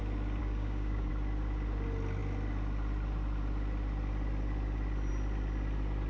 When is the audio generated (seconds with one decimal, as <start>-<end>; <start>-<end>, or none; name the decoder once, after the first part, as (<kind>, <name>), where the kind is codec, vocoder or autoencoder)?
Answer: 0.4-1.1 (codec, DAC)